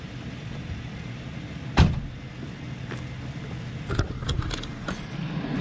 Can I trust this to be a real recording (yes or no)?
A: yes